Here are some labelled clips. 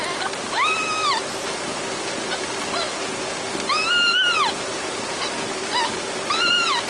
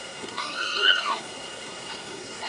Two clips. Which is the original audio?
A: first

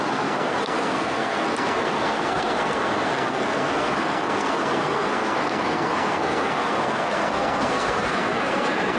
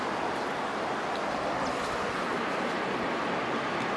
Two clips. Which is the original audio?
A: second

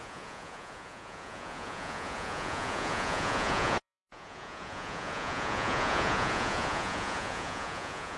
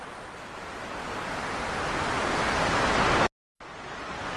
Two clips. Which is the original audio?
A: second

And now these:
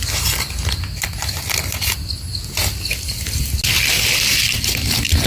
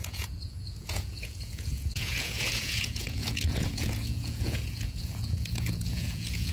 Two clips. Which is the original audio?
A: first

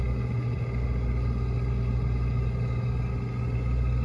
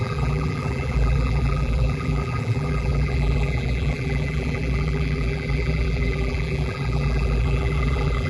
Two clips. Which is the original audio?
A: first